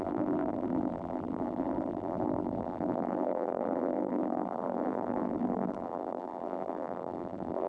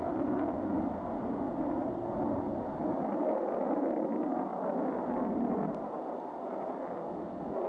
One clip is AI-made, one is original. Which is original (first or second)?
second